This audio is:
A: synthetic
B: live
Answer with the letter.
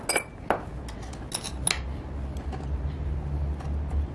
B